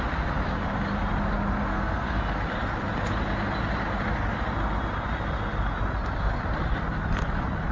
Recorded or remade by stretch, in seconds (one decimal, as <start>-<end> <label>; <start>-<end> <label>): 0.0-1.7 recorded; 1.7-2.2 remade; 2.2-7.7 recorded